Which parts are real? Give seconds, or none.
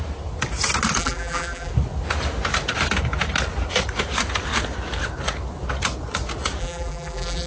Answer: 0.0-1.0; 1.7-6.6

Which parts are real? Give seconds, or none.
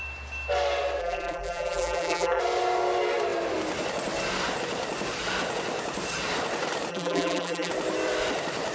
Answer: 0.0-1.0; 2.4-6.9; 7.7-8.7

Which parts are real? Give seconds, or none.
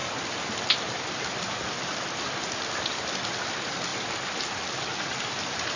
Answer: 3.9-4.8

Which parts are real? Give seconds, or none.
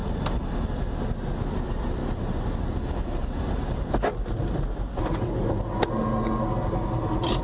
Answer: 0.0-7.4